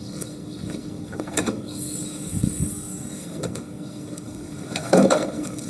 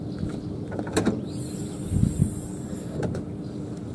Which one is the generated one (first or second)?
first